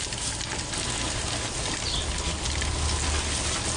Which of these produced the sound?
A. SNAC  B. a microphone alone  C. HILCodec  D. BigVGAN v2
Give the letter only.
B